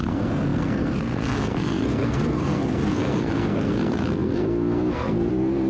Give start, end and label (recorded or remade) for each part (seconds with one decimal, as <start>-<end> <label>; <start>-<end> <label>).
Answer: 0.0-5.7 remade

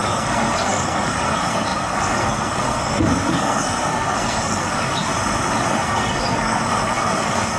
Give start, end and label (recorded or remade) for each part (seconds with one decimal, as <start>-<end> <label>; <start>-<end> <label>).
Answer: 0.0-5.1 remade; 5.1-5.7 recorded; 5.7-7.6 remade

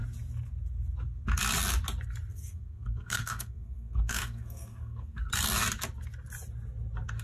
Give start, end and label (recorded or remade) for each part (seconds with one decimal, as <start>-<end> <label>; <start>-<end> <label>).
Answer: 0.0-2.3 recorded; 2.3-5.3 remade; 5.3-7.2 recorded

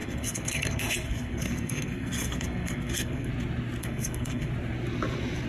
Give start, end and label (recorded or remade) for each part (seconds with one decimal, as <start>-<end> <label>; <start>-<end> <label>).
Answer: 0.0-3.3 remade; 3.3-3.8 recorded; 3.8-4.5 remade; 4.5-5.5 recorded

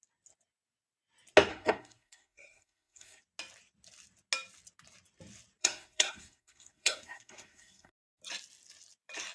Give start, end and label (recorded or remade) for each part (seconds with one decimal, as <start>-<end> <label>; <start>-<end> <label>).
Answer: 0.0-1.5 recorded; 1.5-3.2 remade; 3.2-5.6 recorded; 5.6-8.2 remade; 8.2-9.3 recorded

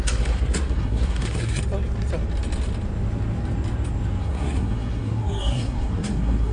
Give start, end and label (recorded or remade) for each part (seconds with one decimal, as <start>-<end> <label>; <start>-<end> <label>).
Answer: 0.0-1.6 remade; 1.6-4.2 recorded; 4.2-6.5 remade

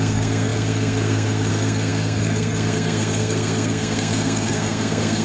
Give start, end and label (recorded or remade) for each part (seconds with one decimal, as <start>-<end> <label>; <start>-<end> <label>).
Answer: 0.0-5.2 remade

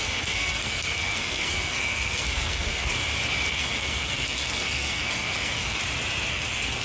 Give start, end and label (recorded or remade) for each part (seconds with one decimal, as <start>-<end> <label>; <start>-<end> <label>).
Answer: 0.0-2.9 remade; 2.9-3.5 recorded; 3.5-5.8 remade; 5.8-6.3 recorded; 6.3-6.8 remade